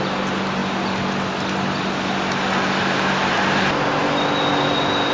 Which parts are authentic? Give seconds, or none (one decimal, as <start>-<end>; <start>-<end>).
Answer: 0.0-5.1